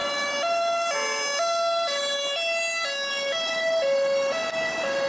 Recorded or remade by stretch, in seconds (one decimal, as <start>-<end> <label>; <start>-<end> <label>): 0.0-5.1 recorded